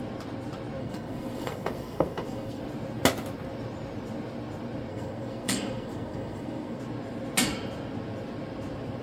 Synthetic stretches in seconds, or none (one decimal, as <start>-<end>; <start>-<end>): 0.8-2.6; 4.9-6.8